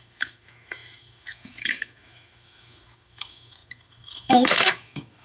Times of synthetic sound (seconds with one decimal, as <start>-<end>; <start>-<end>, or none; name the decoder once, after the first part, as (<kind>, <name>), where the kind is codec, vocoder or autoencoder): 0.0-5.2 (autoencoder, DAC-VAE)